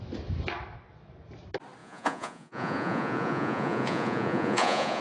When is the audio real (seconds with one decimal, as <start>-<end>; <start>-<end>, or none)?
0.0-1.8